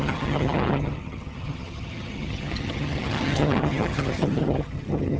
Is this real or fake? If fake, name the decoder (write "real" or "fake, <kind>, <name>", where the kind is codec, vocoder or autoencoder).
fake, vocoder, HiFi-GAN